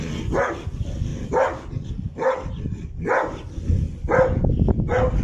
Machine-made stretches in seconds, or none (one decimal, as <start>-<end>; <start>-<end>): none